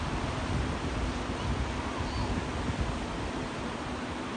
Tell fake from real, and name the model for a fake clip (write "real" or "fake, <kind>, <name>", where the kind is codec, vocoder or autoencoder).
real